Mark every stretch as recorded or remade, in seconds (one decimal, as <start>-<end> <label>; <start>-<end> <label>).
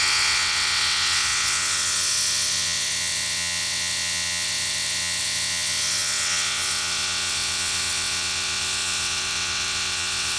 0.0-10.4 remade